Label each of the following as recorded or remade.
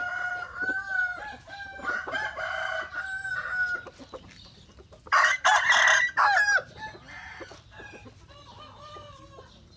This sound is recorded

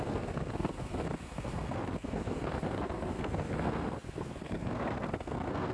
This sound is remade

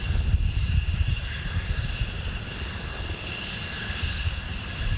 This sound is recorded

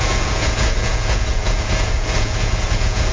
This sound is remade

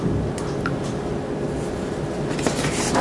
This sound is recorded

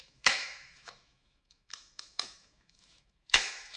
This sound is remade